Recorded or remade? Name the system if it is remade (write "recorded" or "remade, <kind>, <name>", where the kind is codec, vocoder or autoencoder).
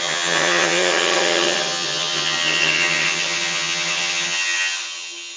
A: remade, vocoder, HiFi-GAN